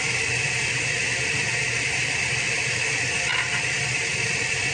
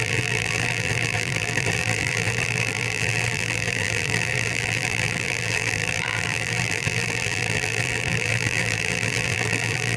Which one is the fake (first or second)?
second